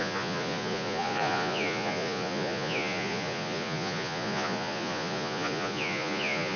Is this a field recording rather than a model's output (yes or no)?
no